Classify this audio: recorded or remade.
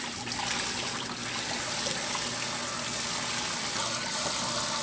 recorded